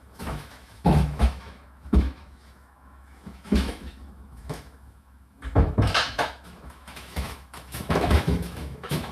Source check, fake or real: fake